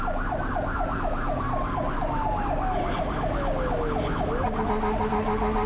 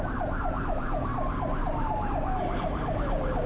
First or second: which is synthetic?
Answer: second